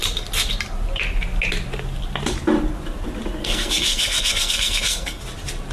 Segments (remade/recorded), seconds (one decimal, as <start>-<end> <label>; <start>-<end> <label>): 0.0-3.4 recorded; 3.4-5.2 remade; 5.2-5.7 recorded